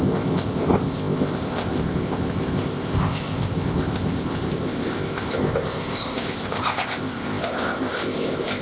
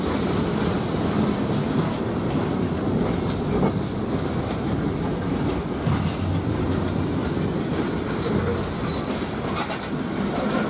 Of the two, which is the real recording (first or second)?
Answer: second